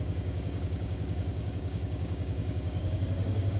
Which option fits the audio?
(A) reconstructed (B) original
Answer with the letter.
A